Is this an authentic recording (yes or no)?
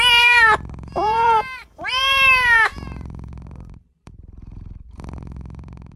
no